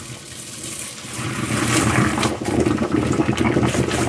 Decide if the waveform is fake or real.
real